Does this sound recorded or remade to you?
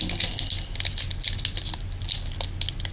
recorded